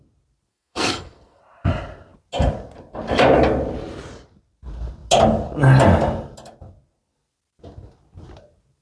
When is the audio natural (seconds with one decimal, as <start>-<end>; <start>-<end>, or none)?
0.0-0.5; 1.4-8.8